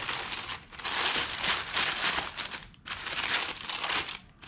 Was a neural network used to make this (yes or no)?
no